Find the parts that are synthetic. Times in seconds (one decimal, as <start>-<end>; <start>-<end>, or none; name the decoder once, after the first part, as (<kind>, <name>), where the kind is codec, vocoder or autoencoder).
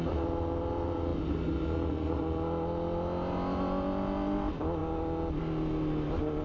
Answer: none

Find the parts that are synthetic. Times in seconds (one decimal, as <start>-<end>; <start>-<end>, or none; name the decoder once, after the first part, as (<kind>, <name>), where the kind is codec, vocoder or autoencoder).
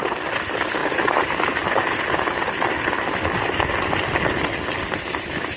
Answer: 0.0-0.8 (vocoder, BigVGAN v2); 2.3-5.6